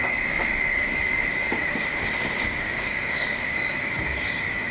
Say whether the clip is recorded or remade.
remade